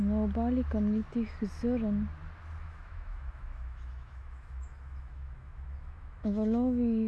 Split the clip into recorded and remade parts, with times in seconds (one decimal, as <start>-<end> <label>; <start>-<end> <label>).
0.0-2.6 recorded; 2.6-7.1 remade